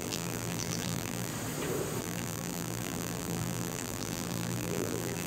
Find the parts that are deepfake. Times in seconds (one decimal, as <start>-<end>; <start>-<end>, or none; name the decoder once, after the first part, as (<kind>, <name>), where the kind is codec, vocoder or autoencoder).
0.0-1.3 (vocoder, BigVGAN v2); 2.0-5.3